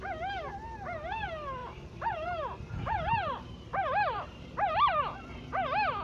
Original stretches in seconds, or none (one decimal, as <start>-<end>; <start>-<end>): 0.0-1.6; 5.2-6.0

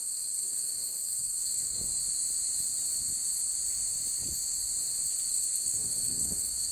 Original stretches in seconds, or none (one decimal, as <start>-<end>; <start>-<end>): 1.9-5.3